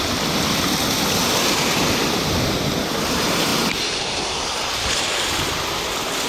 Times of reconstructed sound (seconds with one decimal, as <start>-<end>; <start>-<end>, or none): 1.2-1.8